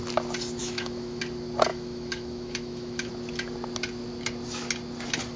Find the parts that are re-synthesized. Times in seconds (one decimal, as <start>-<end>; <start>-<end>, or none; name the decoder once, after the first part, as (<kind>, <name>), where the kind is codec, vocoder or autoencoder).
0.6-1.2 (autoencoder, DAC-VAE); 1.7-3.1